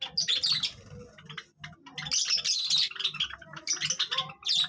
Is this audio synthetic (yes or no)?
no